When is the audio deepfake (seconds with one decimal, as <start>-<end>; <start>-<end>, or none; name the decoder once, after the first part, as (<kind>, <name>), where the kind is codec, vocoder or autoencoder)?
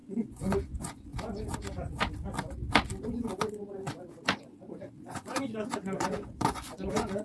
0.0-1.1 (vocoder, Vocos); 4.4-7.2